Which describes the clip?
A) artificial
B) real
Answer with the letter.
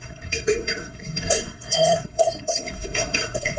A